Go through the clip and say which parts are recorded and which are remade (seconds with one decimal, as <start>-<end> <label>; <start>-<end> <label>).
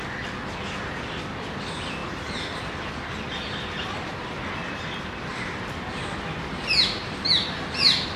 0.0-8.2 recorded